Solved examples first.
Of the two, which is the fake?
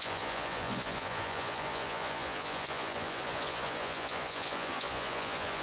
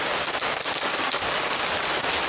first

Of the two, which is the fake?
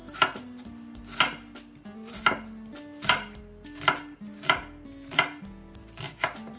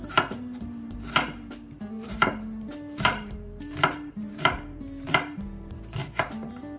second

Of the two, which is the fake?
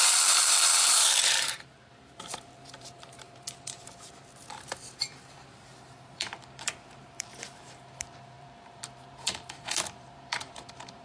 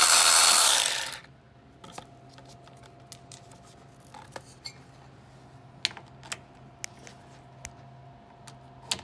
first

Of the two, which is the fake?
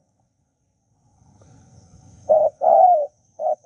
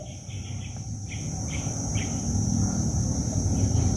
first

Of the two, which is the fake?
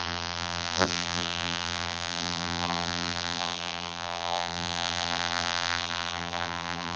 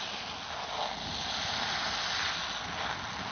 first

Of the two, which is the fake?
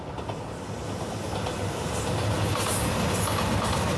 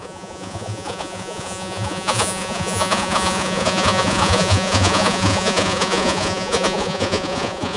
second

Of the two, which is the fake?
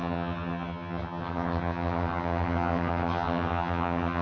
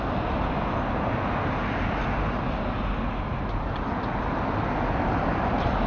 first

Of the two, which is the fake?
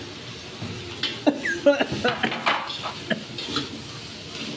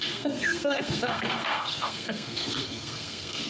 second